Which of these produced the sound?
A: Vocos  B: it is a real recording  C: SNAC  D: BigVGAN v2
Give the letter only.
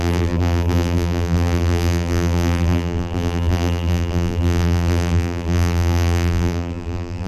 D